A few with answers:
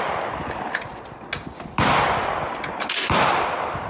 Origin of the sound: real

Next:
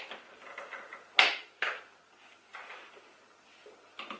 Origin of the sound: real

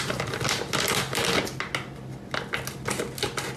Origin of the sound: real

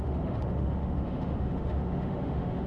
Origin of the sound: fake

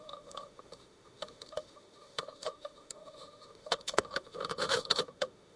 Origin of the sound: fake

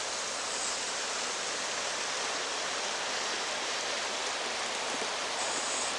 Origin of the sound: fake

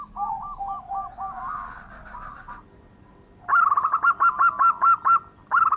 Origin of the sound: real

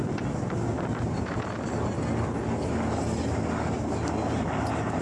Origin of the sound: real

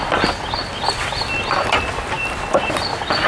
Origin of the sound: real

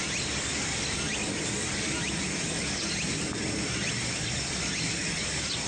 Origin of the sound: real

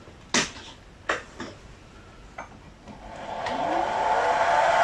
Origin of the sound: real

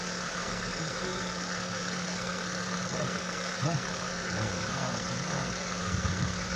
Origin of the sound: fake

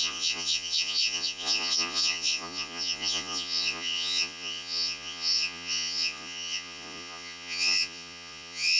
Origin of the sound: fake